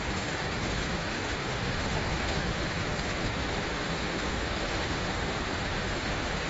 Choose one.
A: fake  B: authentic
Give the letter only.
A